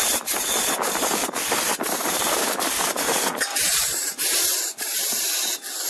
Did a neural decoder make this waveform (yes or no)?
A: yes